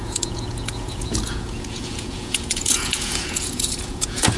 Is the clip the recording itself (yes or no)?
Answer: no